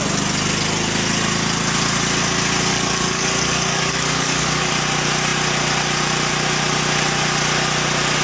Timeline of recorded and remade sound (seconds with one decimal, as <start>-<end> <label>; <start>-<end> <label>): 0.0-2.7 recorded; 2.7-4.7 remade; 4.7-8.2 recorded